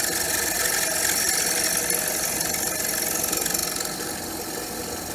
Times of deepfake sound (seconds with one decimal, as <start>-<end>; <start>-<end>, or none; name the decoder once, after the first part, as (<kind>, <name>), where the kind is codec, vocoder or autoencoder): none